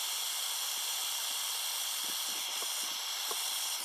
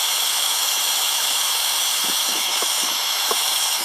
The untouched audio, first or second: first